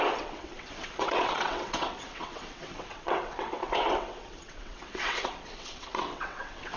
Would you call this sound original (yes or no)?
no